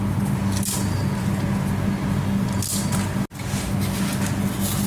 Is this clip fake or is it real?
real